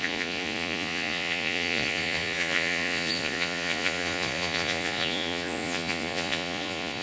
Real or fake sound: fake